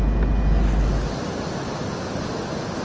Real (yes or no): yes